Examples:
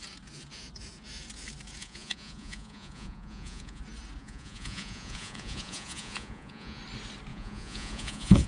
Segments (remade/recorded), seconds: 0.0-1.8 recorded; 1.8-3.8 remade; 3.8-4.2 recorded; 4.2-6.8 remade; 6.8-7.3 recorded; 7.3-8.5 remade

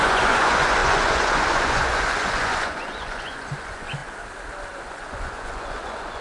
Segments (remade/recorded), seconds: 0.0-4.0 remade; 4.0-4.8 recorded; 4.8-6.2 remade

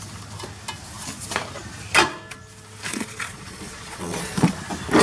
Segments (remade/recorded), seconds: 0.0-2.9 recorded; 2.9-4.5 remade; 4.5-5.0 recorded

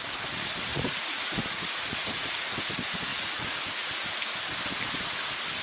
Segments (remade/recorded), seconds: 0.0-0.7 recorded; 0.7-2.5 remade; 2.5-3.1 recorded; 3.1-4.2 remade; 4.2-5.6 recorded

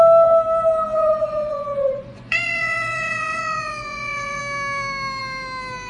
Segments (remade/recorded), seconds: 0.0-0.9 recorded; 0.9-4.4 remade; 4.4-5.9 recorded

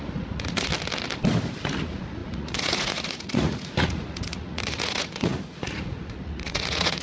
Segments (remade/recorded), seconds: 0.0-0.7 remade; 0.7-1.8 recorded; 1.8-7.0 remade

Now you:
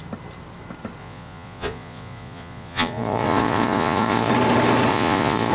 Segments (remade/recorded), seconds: 0.0-1.0 recorded; 1.0-4.3 remade; 4.3-4.9 recorded; 4.9-5.5 remade

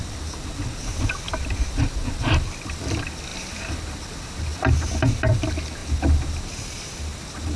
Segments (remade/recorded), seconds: 0.0-7.6 recorded